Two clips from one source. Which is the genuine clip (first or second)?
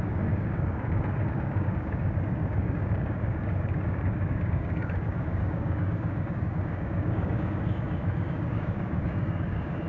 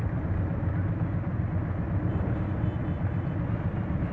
second